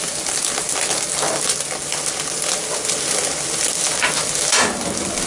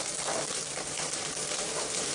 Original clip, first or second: first